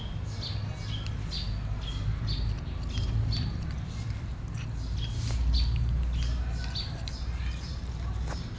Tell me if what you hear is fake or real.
real